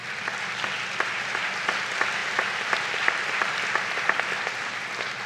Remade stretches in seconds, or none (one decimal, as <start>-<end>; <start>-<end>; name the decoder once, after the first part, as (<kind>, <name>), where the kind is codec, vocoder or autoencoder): none